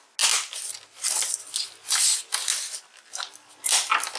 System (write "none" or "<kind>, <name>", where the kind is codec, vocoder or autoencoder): none